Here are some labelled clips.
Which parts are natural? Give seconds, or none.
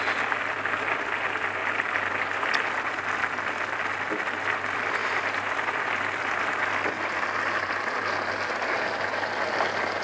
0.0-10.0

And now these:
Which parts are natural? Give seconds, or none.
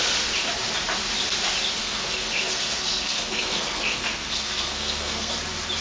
0.0-1.8; 5.3-5.8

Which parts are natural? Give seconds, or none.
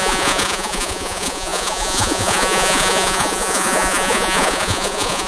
none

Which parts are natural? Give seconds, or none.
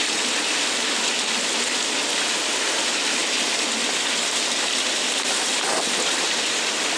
0.0-7.0